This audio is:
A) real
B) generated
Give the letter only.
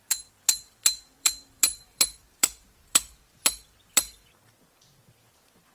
B